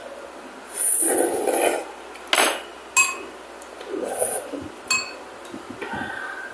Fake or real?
real